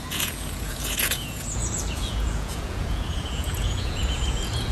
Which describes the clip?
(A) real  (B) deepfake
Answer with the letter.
B